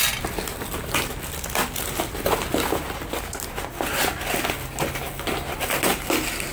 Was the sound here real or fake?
real